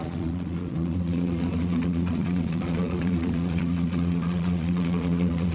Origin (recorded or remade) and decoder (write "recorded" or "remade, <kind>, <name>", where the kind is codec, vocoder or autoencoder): remade, vocoder, Vocos